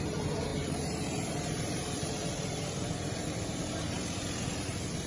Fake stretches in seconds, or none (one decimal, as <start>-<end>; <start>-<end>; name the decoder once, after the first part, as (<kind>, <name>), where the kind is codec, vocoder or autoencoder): 0.0-5.1 (vocoder, BigVGAN v2)